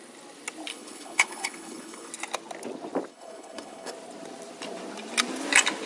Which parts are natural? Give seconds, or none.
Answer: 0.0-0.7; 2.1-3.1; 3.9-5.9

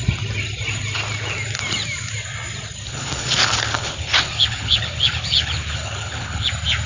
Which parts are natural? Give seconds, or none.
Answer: 0.0-2.8; 6.5-6.9

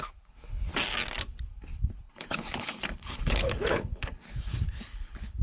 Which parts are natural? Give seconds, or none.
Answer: 0.7-1.4